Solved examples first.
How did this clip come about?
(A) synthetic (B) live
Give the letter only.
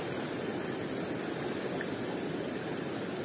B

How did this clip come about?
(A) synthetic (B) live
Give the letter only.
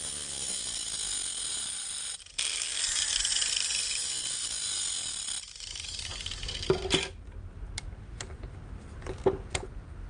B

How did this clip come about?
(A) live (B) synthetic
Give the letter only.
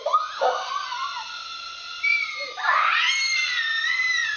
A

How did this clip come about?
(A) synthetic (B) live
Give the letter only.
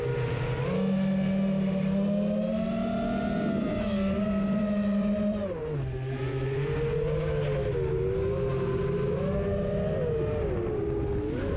B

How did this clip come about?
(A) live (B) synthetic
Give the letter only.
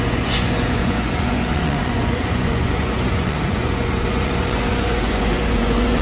B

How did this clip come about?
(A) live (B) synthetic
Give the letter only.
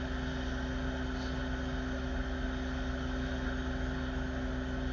A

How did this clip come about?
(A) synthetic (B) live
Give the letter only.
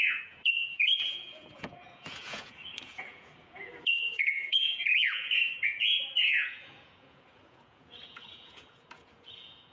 A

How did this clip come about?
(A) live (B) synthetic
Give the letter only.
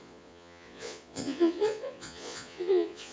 B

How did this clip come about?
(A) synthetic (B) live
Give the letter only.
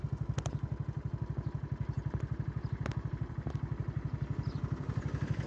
B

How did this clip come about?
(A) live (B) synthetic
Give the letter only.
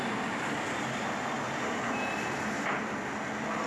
A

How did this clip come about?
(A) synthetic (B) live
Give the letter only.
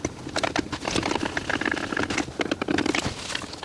B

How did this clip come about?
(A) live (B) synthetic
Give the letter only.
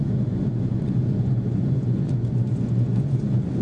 B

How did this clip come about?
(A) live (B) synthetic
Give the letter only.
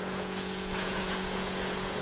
B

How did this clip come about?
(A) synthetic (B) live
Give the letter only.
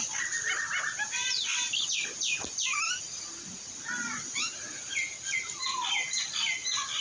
B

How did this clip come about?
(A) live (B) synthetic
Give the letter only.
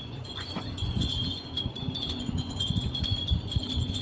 B